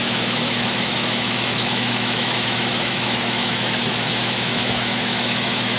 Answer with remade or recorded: remade